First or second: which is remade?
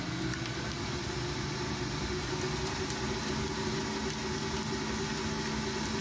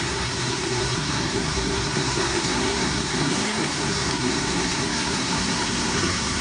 second